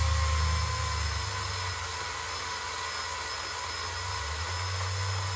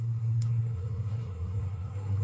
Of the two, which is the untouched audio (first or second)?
first